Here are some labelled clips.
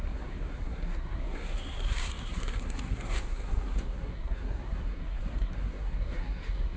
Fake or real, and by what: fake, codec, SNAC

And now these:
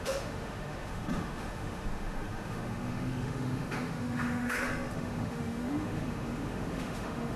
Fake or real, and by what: fake, autoencoder, DAC-VAE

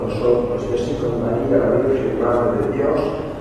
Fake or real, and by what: real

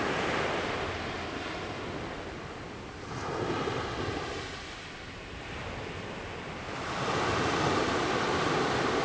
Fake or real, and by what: real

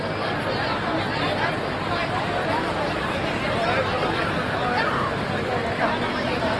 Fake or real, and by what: real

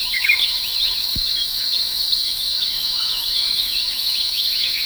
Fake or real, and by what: fake, autoencoder, DAC-VAE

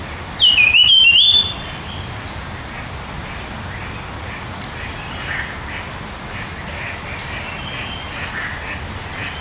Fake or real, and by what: real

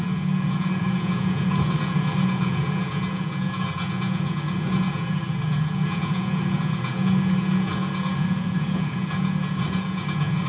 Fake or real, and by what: fake, vocoder, Vocos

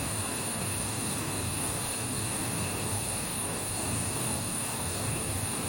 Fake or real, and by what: fake, codec, DAC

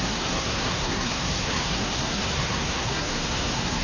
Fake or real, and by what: fake, codec, SNAC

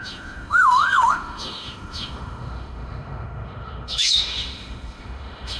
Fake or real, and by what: fake, autoencoder, DAC-VAE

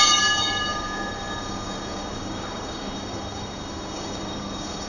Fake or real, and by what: fake, codec, DAC